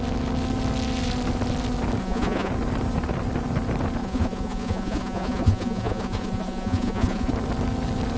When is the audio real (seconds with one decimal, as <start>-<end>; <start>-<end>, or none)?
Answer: 0.0-2.0; 2.5-4.0; 7.3-8.2